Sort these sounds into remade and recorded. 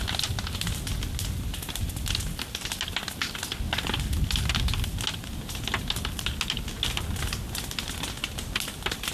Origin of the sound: recorded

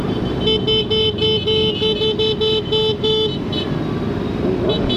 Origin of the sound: recorded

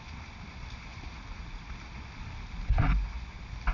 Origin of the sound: recorded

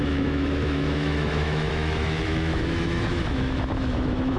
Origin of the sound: remade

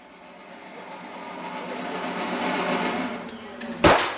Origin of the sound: recorded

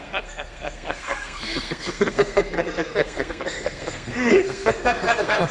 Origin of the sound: remade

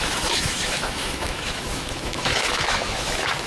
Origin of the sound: remade